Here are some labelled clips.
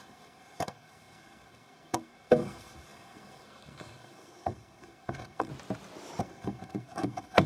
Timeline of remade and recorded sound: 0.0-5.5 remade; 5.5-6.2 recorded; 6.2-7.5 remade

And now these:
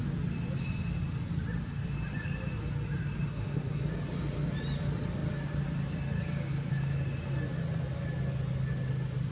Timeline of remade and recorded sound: 0.0-3.3 recorded; 3.3-3.9 remade; 3.9-9.3 recorded

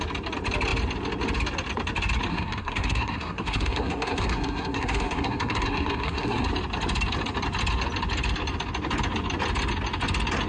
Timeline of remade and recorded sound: 0.0-2.3 recorded; 2.3-6.5 remade; 6.5-10.5 recorded

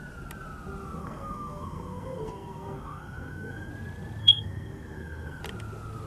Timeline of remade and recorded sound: 0.0-1.0 recorded; 1.0-3.7 remade; 3.7-4.2 recorded; 4.2-5.4 remade; 5.4-6.1 recorded

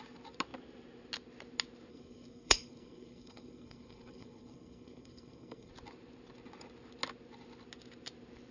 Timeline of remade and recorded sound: 0.0-1.9 recorded; 1.9-5.7 remade; 5.7-8.5 recorded